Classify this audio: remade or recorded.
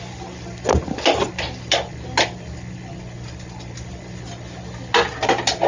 recorded